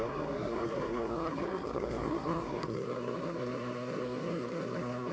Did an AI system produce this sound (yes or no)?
yes